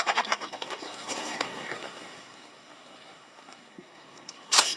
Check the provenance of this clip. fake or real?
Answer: fake